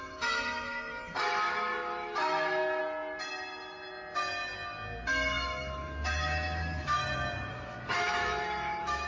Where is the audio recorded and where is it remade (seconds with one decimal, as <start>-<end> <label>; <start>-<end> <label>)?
0.0-2.8 remade; 2.8-5.1 recorded; 5.1-7.0 remade; 7.0-7.5 recorded; 7.5-9.1 remade